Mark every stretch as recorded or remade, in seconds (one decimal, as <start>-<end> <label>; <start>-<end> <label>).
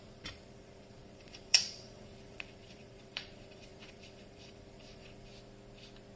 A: 0.0-5.3 remade; 5.3-6.2 recorded